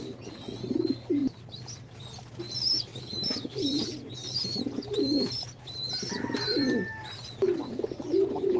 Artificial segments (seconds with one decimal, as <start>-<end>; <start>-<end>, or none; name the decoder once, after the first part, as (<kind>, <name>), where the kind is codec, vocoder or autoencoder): 2.9-3.9 (vocoder, BigVGAN v2)